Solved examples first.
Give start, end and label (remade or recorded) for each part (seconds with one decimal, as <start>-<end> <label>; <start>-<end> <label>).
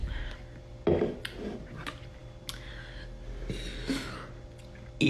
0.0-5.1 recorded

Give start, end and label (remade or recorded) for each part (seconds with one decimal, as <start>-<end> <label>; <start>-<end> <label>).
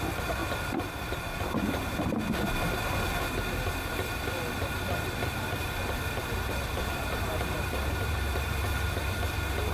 0.0-5.6 recorded; 5.6-9.0 remade; 9.0-9.7 recorded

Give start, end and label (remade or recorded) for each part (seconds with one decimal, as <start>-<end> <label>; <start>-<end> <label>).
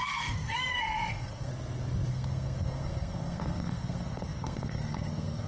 0.0-1.5 remade; 1.5-2.1 recorded; 2.1-5.5 remade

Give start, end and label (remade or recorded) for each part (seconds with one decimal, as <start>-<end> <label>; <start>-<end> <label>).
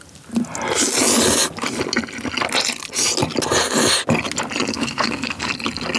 0.0-4.7 recorded; 4.7-5.5 remade; 5.5-6.0 recorded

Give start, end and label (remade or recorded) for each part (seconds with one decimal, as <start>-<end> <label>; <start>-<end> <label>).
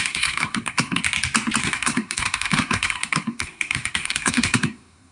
0.0-1.0 remade; 1.0-1.6 recorded; 1.6-5.1 remade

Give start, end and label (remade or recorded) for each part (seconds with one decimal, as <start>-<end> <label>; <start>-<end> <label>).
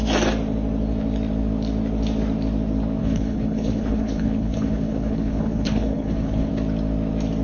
0.0-3.0 recorded; 3.0-6.5 remade; 6.5-7.4 recorded